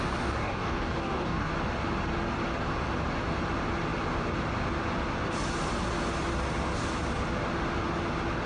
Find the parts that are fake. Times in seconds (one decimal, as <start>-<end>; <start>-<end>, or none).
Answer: 0.4-1.5